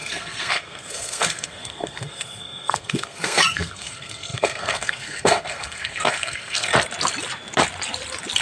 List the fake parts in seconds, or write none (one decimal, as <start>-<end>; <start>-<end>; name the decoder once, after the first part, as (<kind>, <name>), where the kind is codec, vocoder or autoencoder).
0.0-6.7 (codec, SNAC)